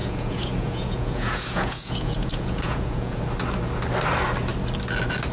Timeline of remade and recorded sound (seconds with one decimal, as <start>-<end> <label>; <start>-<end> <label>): 0.0-3.2 remade; 3.2-5.3 recorded